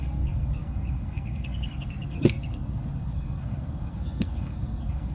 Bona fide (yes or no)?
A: no